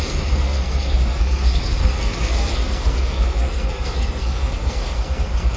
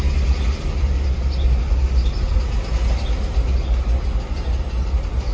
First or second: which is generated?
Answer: first